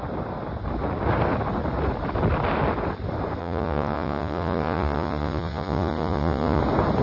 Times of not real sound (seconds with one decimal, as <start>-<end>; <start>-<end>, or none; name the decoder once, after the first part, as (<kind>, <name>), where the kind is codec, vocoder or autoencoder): 3.4-6.6 (vocoder, Vocos)